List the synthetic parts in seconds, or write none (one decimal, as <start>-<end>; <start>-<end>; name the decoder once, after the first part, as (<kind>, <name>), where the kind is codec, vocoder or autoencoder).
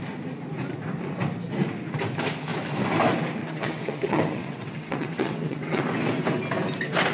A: 3.4-5.8 (vocoder, WaveNeXt)